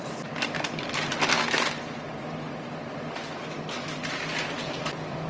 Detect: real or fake real